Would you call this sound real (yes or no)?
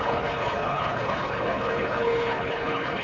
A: no